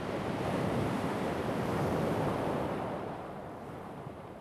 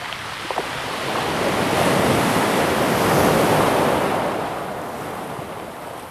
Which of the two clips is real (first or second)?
second